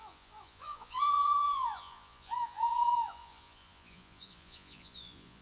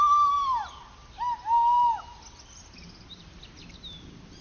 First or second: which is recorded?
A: second